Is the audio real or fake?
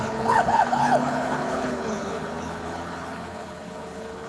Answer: fake